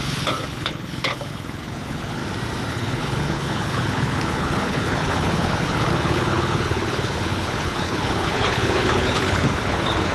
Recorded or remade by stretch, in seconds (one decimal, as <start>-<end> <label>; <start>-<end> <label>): 0.0-2.2 remade; 2.2-2.7 recorded; 2.7-10.1 remade